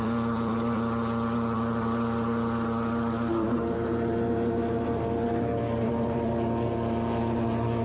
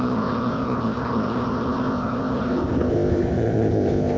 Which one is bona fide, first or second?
first